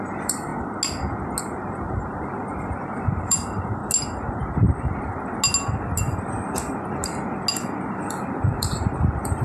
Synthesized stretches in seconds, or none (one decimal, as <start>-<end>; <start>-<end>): 0.0-0.5; 1.4-3.8; 7.9-9.4